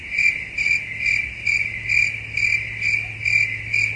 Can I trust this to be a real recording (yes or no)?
yes